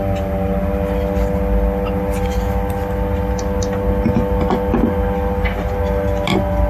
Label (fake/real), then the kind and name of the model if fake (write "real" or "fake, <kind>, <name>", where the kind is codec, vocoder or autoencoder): real